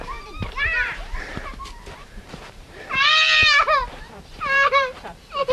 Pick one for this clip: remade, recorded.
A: remade